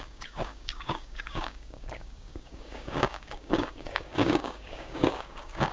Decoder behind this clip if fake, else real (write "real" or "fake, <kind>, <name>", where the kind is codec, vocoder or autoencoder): fake, codec, DAC